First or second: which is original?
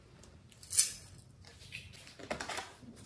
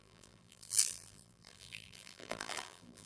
first